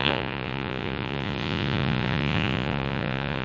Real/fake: fake